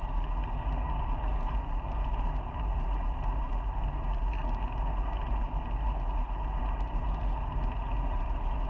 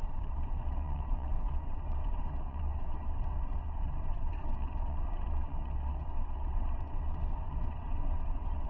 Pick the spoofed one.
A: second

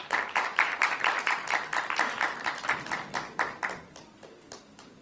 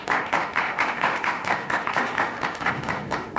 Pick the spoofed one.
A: second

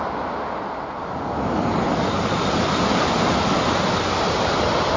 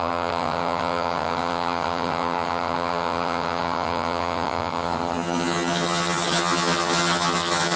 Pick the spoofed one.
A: second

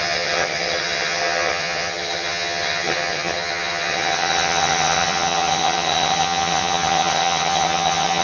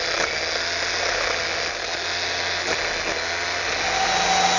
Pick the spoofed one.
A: first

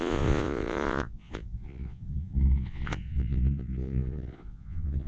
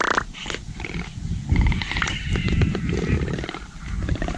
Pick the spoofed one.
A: first